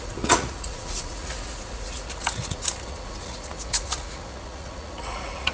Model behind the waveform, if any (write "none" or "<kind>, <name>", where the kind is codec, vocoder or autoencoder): vocoder, Vocos